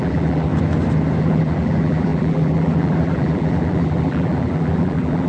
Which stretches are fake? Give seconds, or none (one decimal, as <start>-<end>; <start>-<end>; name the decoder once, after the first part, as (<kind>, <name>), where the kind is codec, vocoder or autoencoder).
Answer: 0.0-0.5 (vocoder, BigVGAN v2); 1.2-5.3